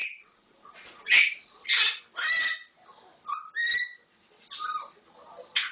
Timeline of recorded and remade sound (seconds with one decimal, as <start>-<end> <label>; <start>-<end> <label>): 0.0-2.0 remade; 2.0-5.7 recorded